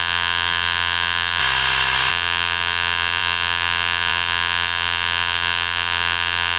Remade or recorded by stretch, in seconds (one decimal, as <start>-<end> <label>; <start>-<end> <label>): 0.0-1.4 remade; 1.4-2.1 recorded; 2.1-6.6 remade